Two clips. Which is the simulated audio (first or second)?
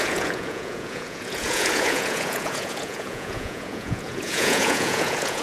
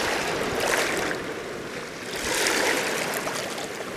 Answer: first